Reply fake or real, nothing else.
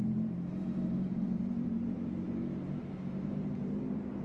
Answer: fake